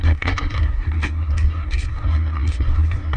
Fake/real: fake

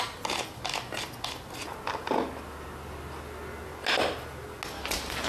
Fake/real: real